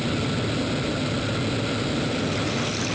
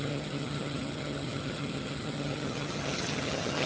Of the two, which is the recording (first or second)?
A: first